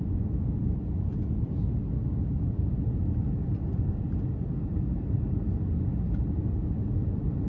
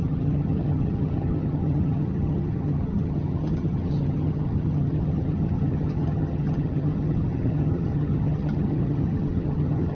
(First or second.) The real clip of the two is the first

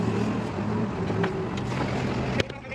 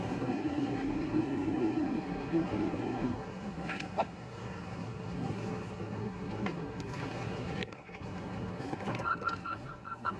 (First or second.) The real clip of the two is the first